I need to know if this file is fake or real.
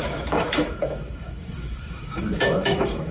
fake